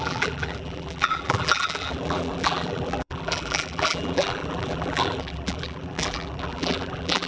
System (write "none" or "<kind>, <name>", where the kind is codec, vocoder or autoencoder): vocoder, BigVGAN v2